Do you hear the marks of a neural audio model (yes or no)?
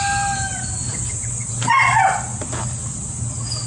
no